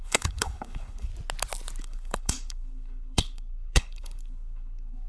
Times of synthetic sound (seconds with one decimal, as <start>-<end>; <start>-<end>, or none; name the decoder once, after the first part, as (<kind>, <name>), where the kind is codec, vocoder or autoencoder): 0.0-1.1 (codec, HILCodec); 1.8-5.1

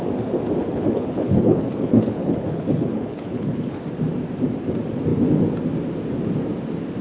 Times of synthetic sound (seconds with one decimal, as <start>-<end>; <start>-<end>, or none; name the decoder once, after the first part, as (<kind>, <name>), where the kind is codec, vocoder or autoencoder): 0.6-3.8 (codec, HILCodec)

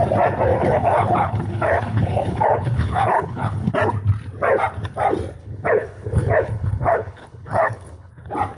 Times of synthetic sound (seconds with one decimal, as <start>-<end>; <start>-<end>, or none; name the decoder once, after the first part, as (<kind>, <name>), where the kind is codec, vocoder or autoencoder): 0.6-3.7 (codec, HILCodec); 5.4-8.1